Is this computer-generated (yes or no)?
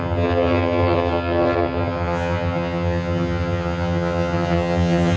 yes